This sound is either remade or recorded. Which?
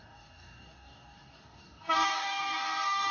remade